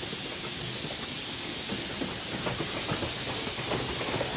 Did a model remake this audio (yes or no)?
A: no